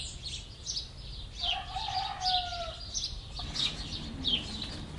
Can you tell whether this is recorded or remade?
recorded